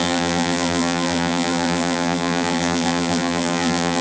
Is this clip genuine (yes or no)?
no